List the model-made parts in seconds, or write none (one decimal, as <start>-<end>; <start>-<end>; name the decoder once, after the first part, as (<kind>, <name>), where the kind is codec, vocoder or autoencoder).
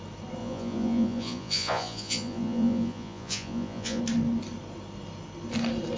0.4-4.0 (vocoder, Vocos)